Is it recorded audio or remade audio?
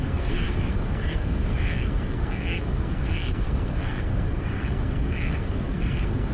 remade